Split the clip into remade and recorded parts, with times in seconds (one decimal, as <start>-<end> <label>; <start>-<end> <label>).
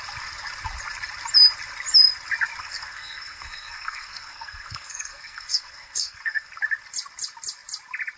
0.0-2.6 recorded; 2.6-6.5 remade; 6.5-8.2 recorded